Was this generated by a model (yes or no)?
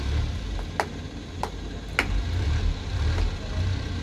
no